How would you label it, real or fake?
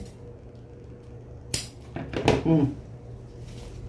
real